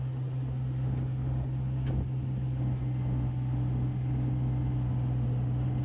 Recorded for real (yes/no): yes